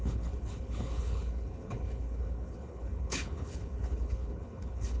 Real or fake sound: fake